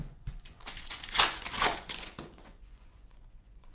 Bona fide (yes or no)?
no